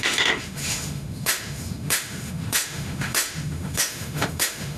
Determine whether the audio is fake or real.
fake